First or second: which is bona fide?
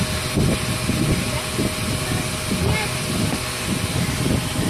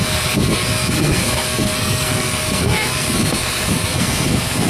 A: first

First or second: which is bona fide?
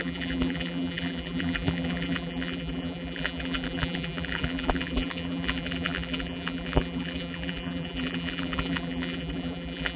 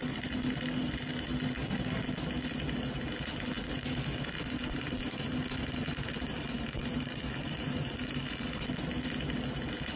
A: second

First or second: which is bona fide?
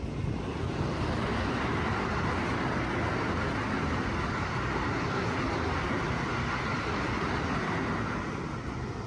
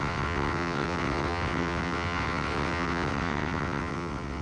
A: first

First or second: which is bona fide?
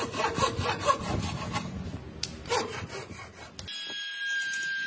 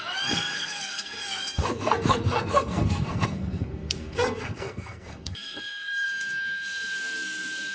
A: first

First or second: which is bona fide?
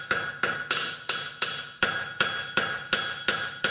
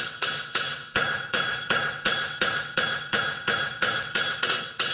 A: first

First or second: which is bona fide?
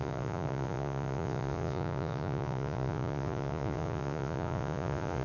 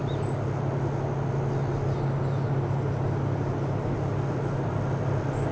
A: second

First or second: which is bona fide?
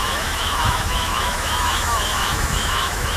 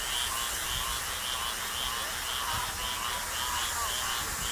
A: second